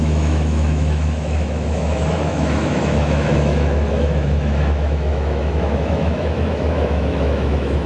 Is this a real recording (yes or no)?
no